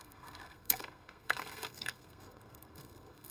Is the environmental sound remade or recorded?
remade